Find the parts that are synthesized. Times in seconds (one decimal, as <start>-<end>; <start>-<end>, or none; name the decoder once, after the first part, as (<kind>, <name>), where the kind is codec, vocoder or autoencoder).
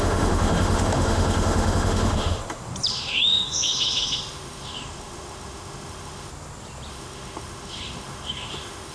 0.0-2.4 (autoencoder, DAC-VAE); 2.9-6.3; 6.9-8.9